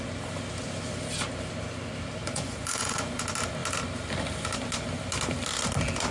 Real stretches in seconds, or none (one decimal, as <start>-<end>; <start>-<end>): 0.0-2.2; 3.2-6.1